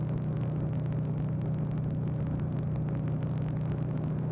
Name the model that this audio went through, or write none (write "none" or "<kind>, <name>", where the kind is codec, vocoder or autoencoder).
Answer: none